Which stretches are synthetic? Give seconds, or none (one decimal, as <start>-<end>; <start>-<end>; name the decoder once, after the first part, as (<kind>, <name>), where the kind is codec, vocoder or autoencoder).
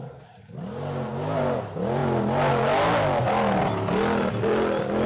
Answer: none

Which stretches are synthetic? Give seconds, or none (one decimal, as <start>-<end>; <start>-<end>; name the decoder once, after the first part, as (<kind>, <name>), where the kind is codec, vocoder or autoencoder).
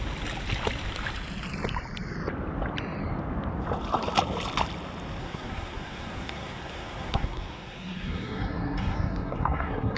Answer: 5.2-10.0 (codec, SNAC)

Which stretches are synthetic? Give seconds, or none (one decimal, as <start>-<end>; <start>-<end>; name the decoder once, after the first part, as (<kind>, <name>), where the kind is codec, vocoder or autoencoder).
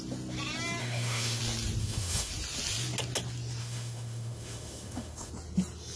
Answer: 0.8-1.4 (autoencoder, DAC-VAE); 1.8-2.3; 3.6-5.3